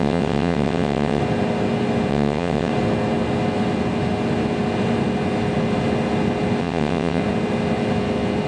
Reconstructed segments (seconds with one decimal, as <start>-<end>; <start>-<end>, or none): 0.0-1.2; 2.1-2.7; 6.6-7.2